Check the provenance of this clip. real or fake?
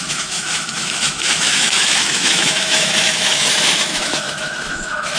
fake